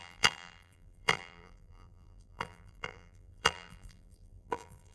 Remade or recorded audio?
remade